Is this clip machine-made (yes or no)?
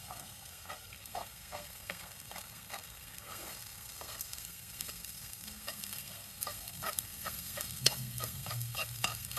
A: yes